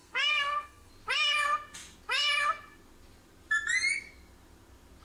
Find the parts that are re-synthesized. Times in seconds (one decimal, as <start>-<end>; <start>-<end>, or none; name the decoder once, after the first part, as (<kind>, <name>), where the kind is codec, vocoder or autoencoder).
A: 0.0-0.9 (codec, SNAC)